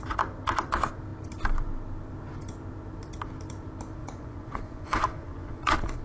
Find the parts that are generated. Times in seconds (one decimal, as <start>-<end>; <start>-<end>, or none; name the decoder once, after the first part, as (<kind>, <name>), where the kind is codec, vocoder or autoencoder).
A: 4.0-6.0 (vocoder, Vocos)